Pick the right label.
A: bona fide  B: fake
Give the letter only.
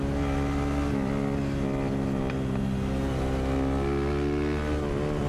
A